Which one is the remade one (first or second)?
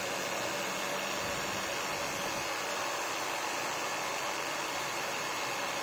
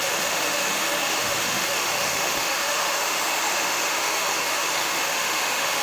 second